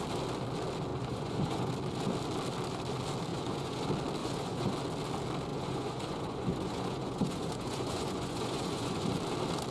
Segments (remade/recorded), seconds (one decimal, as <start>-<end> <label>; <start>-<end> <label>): 0.0-0.9 recorded; 0.9-1.7 remade; 1.7-3.3 recorded; 3.3-3.8 remade; 3.8-4.2 recorded; 4.2-4.7 remade; 4.7-5.5 recorded; 5.5-9.2 remade; 9.2-9.7 recorded